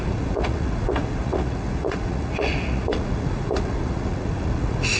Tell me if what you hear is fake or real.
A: fake